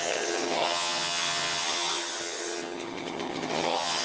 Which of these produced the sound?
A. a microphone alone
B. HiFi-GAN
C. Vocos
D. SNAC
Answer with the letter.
B